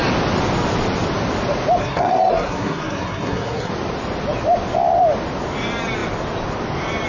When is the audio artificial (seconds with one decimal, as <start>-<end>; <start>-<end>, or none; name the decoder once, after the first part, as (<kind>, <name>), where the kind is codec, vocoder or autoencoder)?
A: 1.8-3.7 (codec, SNAC)